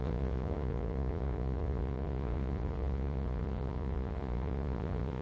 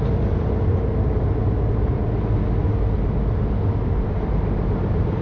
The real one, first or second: second